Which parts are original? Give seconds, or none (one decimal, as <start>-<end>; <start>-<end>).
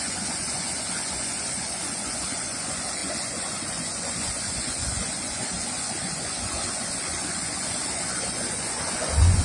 none